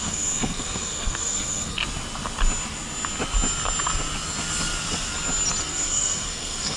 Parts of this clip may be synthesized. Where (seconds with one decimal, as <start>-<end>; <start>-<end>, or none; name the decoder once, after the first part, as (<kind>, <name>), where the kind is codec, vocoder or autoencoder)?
0.0-1.8 (codec, SNAC); 5.6-6.8